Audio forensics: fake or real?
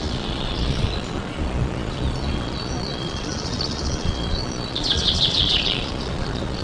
fake